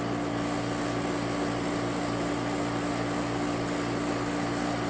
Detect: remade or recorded recorded